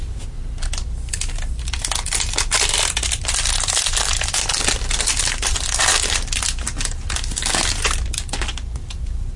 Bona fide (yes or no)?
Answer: yes